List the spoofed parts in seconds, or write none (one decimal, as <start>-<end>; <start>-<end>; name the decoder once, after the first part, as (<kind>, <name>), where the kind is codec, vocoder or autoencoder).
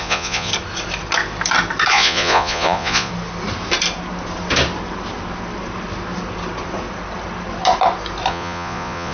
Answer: 0.0-0.5 (vocoder, Vocos); 1.9-3.1; 8.3-9.1